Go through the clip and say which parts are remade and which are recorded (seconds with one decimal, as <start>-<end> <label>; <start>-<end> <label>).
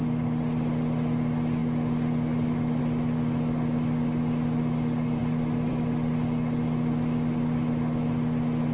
0.0-8.7 recorded